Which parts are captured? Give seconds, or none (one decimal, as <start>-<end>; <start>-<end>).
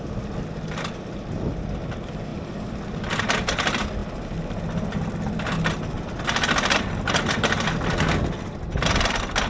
0.0-9.5